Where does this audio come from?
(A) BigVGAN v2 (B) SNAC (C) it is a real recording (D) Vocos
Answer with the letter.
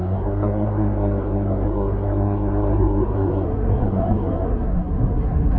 B